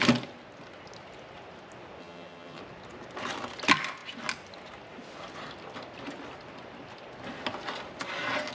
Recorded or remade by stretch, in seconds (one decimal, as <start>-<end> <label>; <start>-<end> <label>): 0.0-2.0 recorded; 2.0-2.6 remade; 2.6-8.5 recorded

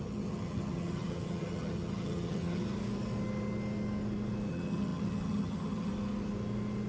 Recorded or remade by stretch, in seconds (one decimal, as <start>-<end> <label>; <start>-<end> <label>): 0.0-2.6 remade; 2.6-4.5 recorded; 4.5-5.9 remade; 5.9-6.9 recorded

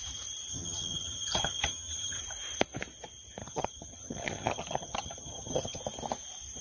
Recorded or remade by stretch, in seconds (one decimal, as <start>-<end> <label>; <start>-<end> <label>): 0.0-0.5 recorded; 0.5-2.2 remade; 2.2-3.4 recorded; 3.4-5.8 remade; 5.8-6.6 recorded

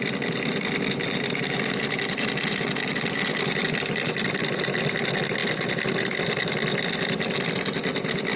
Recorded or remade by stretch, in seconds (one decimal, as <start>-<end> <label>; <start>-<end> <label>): 0.0-8.4 recorded

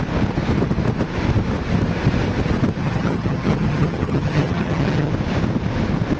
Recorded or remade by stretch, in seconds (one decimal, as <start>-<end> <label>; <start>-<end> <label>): 0.0-2.8 recorded; 2.8-5.1 remade; 5.1-6.2 recorded